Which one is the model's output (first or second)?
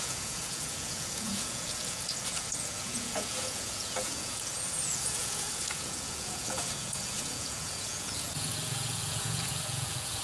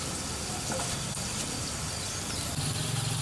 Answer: first